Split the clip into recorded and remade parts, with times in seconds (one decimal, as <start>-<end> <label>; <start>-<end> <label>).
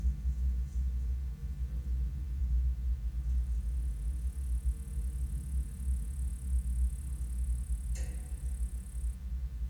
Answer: 0.0-9.7 recorded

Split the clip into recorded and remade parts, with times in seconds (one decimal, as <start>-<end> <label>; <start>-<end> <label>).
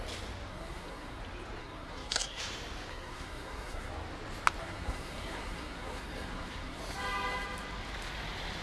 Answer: 0.0-0.5 recorded; 0.5-1.2 remade; 1.2-1.6 recorded; 1.6-2.4 remade; 2.4-2.9 recorded; 2.9-3.9 remade; 3.9-4.6 recorded; 4.6-6.8 remade; 6.8-8.6 recorded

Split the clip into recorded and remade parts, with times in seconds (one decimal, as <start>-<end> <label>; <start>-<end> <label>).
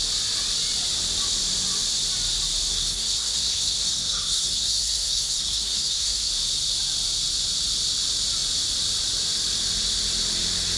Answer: 0.0-2.7 recorded; 2.7-6.3 remade; 6.3-10.8 recorded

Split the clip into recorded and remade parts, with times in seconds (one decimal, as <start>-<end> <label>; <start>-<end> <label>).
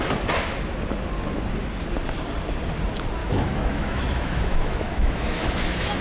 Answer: 0.0-3.2 recorded; 3.2-6.0 remade